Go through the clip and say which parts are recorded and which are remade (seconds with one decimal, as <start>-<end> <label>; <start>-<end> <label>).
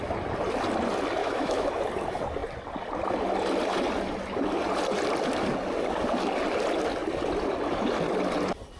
0.0-1.2 recorded; 1.2-1.7 remade; 1.7-8.8 recorded